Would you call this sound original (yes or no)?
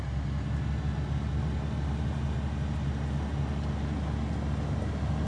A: yes